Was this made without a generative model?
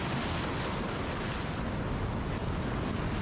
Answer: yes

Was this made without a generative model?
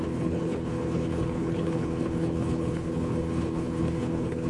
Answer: no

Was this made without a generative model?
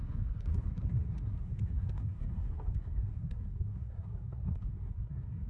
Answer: no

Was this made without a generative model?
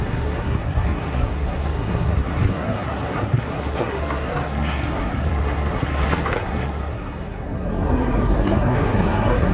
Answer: no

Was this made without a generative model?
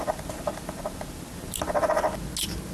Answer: yes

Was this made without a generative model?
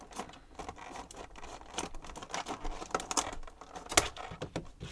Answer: yes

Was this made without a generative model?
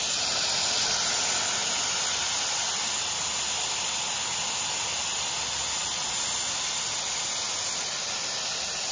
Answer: yes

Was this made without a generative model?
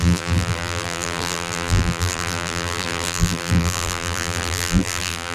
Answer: no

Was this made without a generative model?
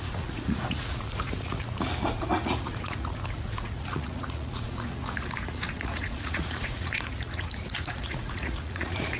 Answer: no